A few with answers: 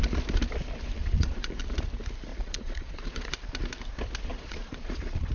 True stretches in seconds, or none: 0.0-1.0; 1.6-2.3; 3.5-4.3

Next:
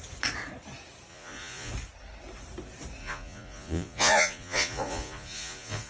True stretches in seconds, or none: 0.0-1.1; 1.7-3.0

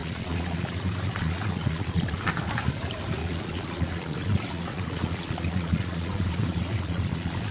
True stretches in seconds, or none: 2.3-3.2